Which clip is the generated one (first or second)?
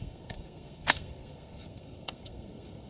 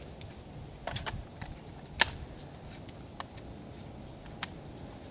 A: first